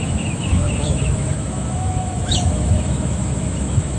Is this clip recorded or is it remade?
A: remade